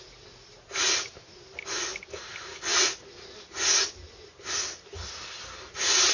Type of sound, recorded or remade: recorded